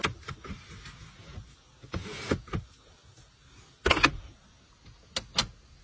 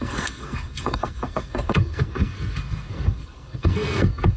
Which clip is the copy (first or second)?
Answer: second